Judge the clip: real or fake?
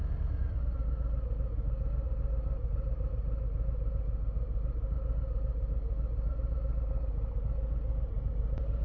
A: real